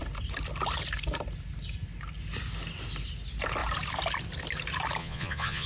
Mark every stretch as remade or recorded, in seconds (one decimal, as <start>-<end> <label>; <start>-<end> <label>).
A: 0.0-5.0 recorded; 5.0-5.7 remade